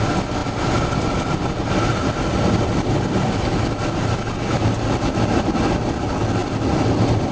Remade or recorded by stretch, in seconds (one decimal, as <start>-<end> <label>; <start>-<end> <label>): 0.0-7.3 recorded